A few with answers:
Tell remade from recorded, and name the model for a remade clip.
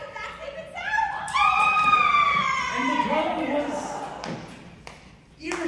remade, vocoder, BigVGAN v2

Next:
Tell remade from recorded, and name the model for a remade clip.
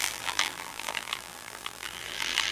remade, vocoder, BigVGAN v2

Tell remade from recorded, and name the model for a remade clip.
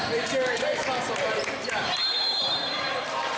remade, vocoder, BigVGAN v2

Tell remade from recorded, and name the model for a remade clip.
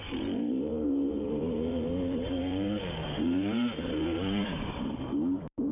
remade, vocoder, BigVGAN v2